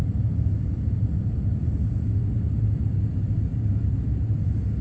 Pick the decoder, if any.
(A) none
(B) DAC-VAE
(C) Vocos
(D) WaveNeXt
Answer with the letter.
A